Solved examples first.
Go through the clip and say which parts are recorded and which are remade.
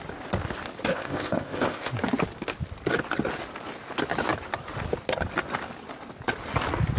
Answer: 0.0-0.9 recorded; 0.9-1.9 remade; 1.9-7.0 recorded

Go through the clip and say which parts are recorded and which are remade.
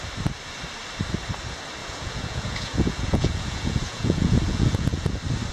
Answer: 0.0-1.8 recorded; 1.8-5.1 remade; 5.1-5.5 recorded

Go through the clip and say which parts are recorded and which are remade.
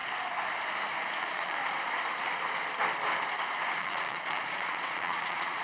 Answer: 0.0-1.0 recorded; 1.0-1.6 remade; 1.6-3.8 recorded; 3.8-5.6 remade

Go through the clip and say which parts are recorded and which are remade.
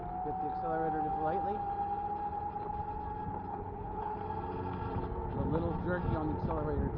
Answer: 0.0-3.5 recorded; 3.5-4.2 remade; 4.2-7.0 recorded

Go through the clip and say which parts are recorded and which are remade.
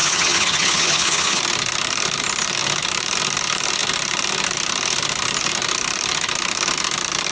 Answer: 0.0-1.4 remade; 1.4-7.3 recorded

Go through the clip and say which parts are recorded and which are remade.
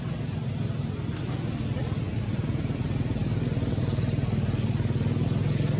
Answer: 0.0-5.8 recorded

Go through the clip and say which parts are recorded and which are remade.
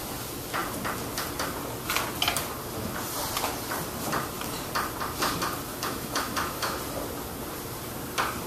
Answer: 0.0-5.7 recorded; 5.7-6.8 remade; 6.8-8.5 recorded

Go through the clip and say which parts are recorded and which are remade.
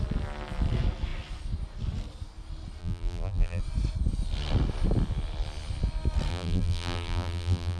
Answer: 0.0-2.8 recorded; 2.8-3.6 remade; 3.6-6.3 recorded; 6.3-7.8 remade